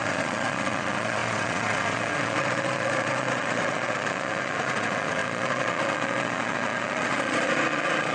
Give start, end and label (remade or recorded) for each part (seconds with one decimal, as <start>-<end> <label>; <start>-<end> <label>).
0.0-8.1 remade